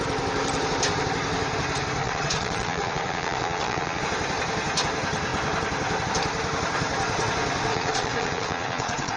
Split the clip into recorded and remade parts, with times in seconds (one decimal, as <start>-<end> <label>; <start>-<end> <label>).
0.0-2.0 recorded; 2.0-4.0 remade; 4.0-7.7 recorded; 7.7-9.2 remade